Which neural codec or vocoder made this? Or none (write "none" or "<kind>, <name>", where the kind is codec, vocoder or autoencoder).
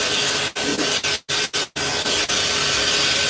none